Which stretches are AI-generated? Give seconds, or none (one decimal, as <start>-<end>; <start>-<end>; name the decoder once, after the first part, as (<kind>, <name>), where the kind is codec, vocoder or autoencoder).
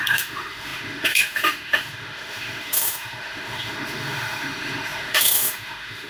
0.0-6.1 (autoencoder, DAC-VAE)